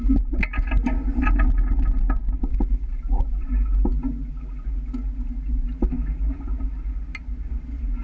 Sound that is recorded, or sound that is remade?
recorded